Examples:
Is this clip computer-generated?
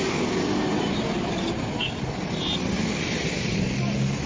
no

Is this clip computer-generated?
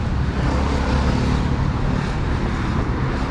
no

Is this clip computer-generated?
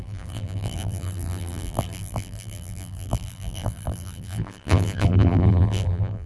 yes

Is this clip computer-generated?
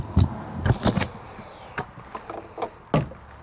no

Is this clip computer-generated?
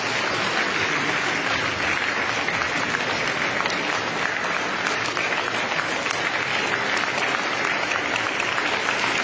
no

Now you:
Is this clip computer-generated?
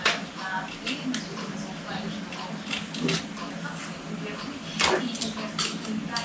no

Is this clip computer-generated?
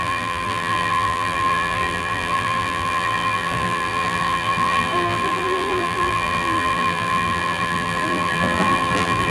yes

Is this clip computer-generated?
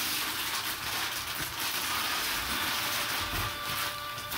no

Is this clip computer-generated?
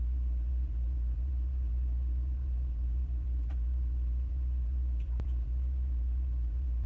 yes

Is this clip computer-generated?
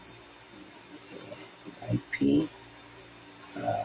no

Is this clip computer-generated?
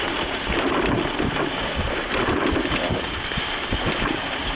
yes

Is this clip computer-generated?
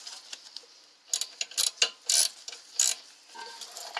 no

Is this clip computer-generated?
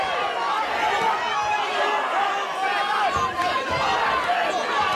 no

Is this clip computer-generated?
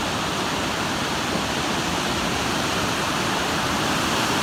yes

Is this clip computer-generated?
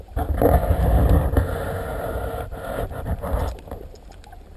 no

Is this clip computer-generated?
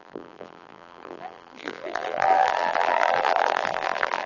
yes